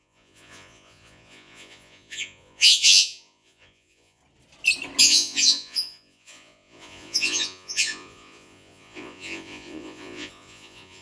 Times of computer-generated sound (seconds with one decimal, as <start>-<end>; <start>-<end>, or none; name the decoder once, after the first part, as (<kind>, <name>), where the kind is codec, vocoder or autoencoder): 0.0-4.2 (vocoder, Vocos); 5.0-11.0

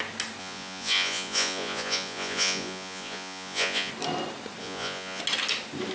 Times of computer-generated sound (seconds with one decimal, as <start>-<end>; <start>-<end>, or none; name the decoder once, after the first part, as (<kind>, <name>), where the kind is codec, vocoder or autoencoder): 0.4-3.9 (vocoder, Vocos); 4.6-5.2

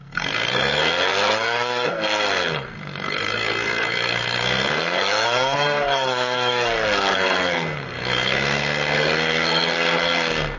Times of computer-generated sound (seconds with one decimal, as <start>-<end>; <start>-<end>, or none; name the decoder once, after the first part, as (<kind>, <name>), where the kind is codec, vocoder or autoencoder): 0.0-10.6 (codec, SNAC)

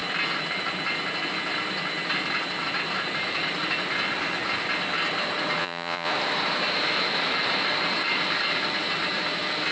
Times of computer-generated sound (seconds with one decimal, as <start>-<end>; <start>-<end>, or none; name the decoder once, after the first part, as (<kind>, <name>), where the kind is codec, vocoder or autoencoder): 5.6-6.1 (vocoder, Vocos)

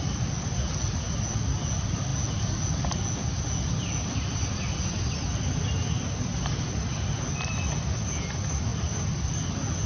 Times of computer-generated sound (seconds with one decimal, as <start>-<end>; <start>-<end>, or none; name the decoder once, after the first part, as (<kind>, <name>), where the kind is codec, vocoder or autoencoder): none